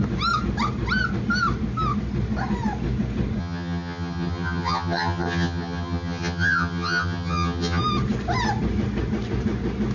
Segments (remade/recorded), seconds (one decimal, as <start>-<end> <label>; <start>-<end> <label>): 0.0-3.4 recorded; 3.4-7.8 remade; 7.8-9.9 recorded